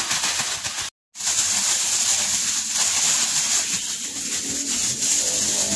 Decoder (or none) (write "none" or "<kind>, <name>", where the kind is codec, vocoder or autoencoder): none